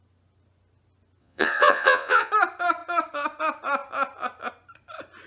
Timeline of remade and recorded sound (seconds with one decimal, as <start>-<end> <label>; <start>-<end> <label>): 0.0-1.2 recorded; 1.2-2.3 remade; 2.3-5.3 recorded